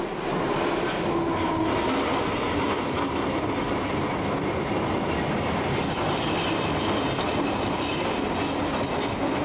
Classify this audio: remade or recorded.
recorded